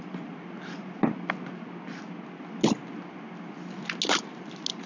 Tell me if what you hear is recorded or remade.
recorded